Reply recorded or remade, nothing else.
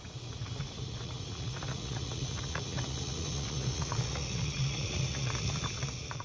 remade